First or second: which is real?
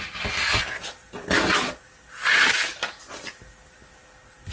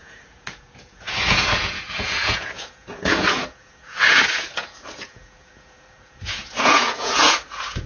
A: first